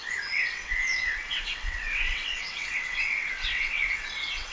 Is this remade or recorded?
remade